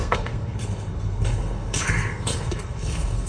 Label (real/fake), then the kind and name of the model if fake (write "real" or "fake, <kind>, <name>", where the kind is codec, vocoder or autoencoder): fake, codec, SNAC